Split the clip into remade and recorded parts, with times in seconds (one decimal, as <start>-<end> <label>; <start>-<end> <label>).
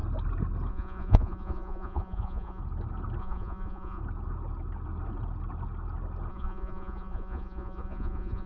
0.0-0.7 recorded; 0.7-2.6 remade; 2.6-3.2 recorded; 3.2-4.0 remade; 4.0-6.3 recorded; 6.3-8.5 remade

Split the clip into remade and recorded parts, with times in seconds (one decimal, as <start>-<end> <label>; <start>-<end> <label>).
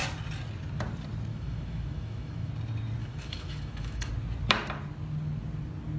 0.0-1.3 recorded; 1.3-2.5 remade; 2.5-3.0 recorded; 3.0-4.1 remade; 4.1-6.0 recorded